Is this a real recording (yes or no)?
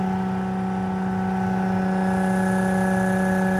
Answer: yes